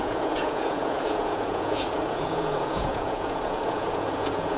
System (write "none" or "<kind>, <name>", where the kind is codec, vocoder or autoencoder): vocoder, Vocos